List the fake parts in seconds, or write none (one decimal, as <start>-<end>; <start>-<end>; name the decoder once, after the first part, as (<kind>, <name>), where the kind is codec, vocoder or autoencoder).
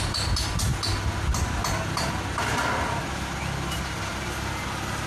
none